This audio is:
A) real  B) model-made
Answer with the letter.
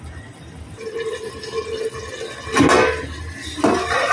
A